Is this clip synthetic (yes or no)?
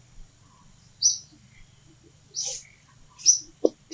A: no